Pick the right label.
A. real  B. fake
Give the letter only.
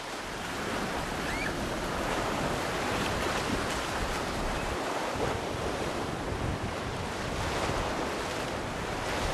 B